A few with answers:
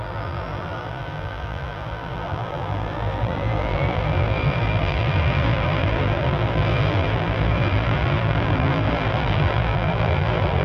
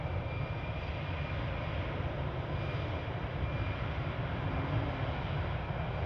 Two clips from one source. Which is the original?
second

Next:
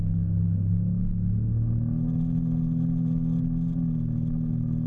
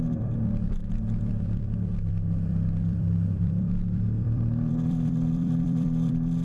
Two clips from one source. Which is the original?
first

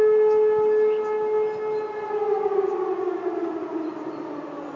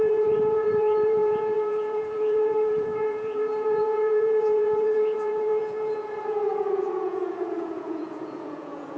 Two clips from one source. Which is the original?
first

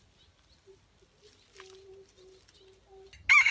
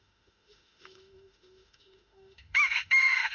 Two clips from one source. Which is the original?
first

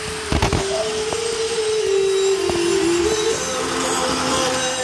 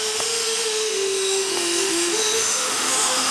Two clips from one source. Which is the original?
first